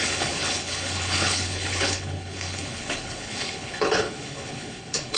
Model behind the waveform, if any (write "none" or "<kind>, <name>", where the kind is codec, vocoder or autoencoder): codec, HILCodec